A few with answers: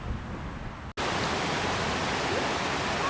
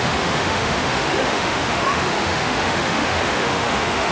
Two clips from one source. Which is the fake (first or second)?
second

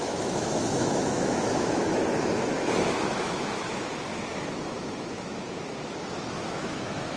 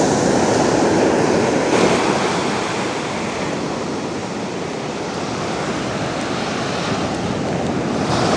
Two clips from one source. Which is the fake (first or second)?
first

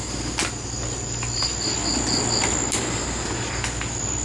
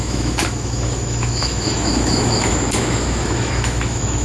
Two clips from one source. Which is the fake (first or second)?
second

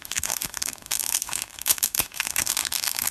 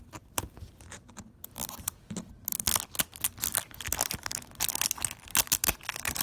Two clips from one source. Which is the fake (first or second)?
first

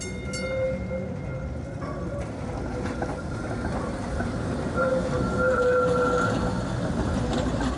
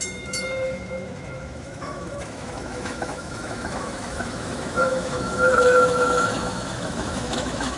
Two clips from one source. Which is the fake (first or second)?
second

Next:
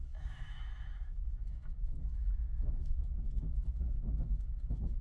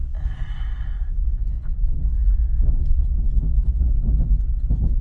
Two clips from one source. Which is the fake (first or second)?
first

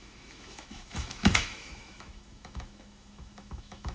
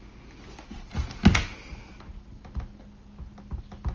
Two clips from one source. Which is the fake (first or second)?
first